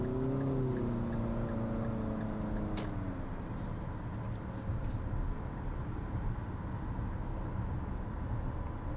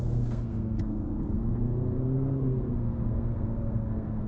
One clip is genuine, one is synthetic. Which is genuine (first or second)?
first